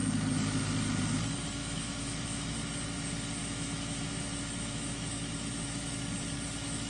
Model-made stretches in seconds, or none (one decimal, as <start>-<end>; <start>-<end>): 1.6-2.6; 3.4-5.9